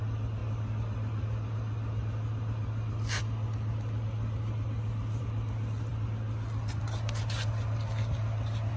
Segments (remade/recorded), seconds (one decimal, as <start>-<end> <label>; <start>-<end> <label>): 0.0-8.8 recorded

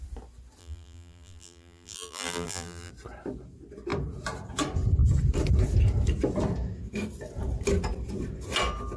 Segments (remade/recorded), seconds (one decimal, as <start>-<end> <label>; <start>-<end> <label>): 0.0-0.6 recorded; 0.6-2.9 remade; 2.9-9.0 recorded

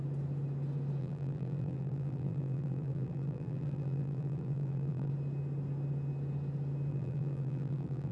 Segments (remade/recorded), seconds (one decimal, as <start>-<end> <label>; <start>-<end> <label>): 0.0-1.0 recorded; 1.0-5.1 remade; 5.1-6.9 recorded; 6.9-8.1 remade

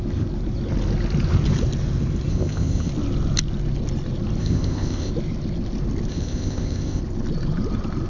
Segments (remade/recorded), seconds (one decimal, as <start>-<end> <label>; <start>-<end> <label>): 0.0-2.3 recorded; 2.3-2.9 remade; 2.9-4.4 recorded; 4.4-5.1 remade; 5.1-6.1 recorded; 6.1-7.0 remade; 7.0-8.1 recorded

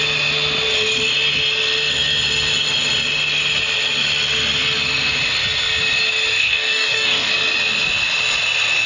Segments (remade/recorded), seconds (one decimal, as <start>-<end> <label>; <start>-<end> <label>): 0.0-6.4 recorded; 6.4-7.3 remade; 7.3-8.9 recorded

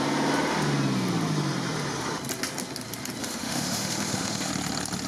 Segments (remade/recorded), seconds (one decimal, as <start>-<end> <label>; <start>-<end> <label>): 0.0-3.2 recorded; 3.2-4.5 remade; 4.5-5.1 recorded

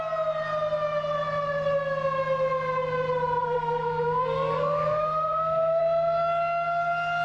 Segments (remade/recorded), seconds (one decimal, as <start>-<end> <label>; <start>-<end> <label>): 0.0-3.4 recorded; 3.4-5.8 remade; 5.8-7.2 recorded

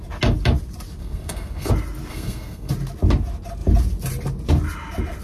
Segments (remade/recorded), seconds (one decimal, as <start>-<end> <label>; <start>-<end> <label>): 0.0-1.0 recorded; 1.0-1.7 remade; 1.7-2.1 recorded; 2.1-2.7 remade; 2.7-5.2 recorded